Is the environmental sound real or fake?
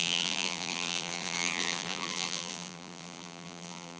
fake